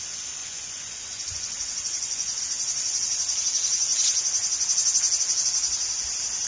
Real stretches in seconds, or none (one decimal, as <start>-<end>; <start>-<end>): 0.0-0.4; 2.4-6.5